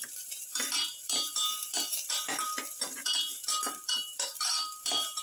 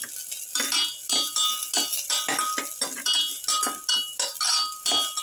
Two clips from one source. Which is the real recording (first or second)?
second